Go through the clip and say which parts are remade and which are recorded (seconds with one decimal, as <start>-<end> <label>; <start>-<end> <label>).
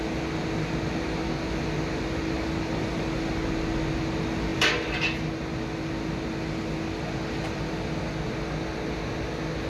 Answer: 0.0-9.7 recorded